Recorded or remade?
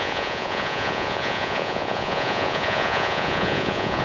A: remade